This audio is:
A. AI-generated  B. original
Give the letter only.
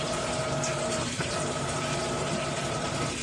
A